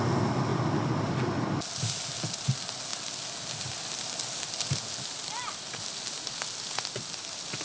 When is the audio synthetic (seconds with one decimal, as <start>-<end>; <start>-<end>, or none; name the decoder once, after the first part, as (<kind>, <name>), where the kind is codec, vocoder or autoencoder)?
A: none